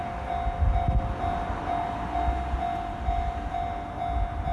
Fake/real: real